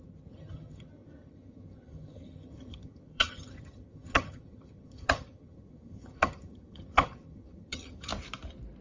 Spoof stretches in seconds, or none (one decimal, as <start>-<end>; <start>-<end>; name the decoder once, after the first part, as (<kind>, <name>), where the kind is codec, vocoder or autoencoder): 0.0-8.1 (vocoder, HiFi-GAN)